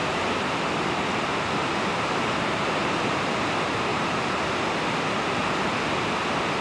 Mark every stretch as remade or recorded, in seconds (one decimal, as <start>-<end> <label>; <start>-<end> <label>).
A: 0.0-2.7 remade; 2.7-3.9 recorded; 3.9-4.4 remade; 4.4-6.6 recorded